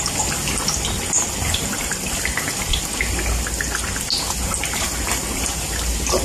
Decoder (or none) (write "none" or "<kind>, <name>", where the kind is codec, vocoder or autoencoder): none